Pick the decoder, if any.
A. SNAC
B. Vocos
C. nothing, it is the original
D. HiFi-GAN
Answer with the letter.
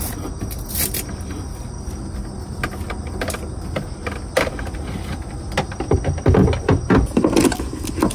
C